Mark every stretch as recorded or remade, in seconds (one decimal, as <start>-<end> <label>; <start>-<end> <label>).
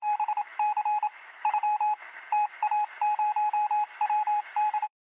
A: 0.0-0.5 remade; 0.5-1.2 recorded; 1.2-5.0 remade